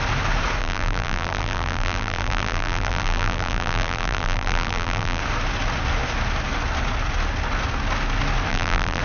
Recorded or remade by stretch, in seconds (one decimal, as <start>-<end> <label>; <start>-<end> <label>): 0.0-0.6 recorded; 0.6-5.2 remade; 5.2-8.5 recorded; 8.5-9.0 remade